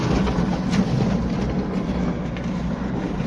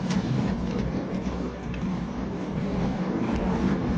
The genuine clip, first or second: first